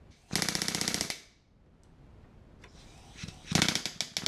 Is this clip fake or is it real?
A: real